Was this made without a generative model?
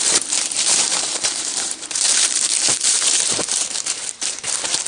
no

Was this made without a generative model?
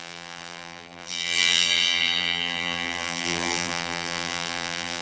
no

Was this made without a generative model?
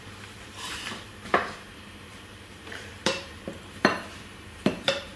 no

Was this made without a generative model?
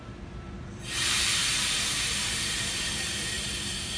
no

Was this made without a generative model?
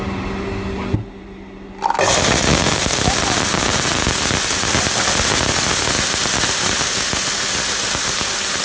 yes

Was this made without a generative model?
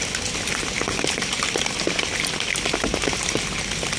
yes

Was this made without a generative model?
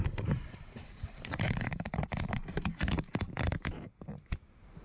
no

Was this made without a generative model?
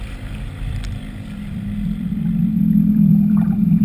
no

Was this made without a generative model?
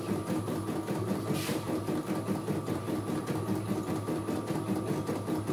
yes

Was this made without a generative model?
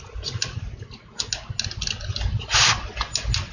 yes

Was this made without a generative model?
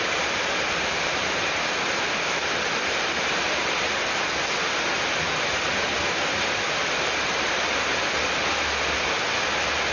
yes